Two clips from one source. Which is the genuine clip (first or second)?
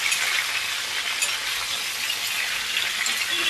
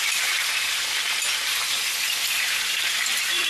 first